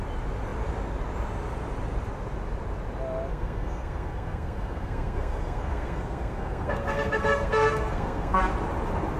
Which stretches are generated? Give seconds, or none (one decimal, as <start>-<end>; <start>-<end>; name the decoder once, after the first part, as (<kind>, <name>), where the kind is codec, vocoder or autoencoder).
3.3-8.4 (codec, SNAC)